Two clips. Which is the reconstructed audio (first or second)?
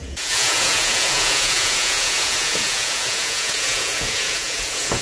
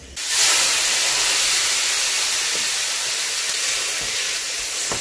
first